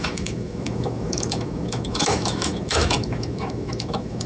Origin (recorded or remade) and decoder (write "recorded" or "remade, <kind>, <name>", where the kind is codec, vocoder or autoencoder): remade, autoencoder, DAC-VAE